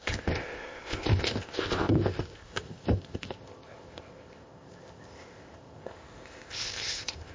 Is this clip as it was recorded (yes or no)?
no